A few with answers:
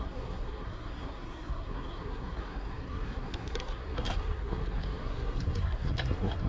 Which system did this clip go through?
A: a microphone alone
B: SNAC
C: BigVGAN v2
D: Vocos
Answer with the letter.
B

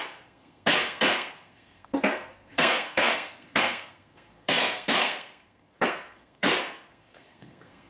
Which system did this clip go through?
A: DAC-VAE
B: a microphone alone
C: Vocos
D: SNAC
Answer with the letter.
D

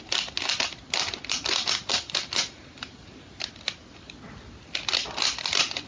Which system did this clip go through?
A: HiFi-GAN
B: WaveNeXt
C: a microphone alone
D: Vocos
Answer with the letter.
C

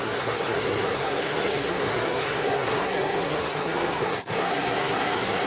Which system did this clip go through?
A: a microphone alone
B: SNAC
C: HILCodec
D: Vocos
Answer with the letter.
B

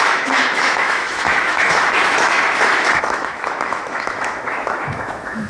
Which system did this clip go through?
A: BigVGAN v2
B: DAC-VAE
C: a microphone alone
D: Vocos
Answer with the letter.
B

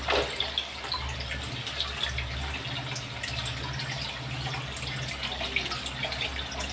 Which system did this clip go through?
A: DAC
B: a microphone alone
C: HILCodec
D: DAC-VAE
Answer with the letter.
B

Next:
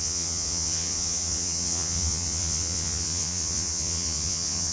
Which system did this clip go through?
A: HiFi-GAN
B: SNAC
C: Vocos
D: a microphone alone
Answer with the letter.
C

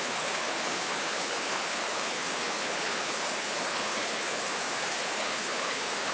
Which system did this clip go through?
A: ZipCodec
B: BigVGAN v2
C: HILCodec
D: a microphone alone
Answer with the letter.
C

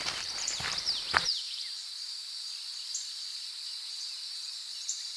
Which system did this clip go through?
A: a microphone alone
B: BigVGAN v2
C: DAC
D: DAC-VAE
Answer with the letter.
B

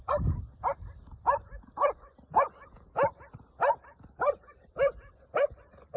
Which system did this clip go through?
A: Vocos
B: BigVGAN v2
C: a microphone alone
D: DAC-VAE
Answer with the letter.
C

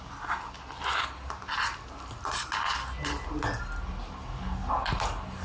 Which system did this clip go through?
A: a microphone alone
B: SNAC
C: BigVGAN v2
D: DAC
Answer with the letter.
A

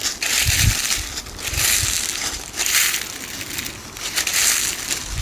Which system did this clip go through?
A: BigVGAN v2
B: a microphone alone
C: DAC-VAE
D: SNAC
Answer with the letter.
B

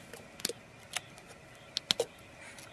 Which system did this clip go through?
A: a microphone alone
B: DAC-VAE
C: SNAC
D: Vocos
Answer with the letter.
A